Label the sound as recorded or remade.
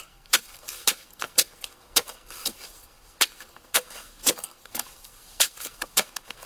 remade